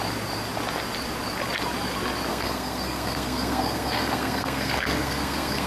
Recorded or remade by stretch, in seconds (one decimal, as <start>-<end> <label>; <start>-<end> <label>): 0.0-2.3 recorded; 2.3-5.7 remade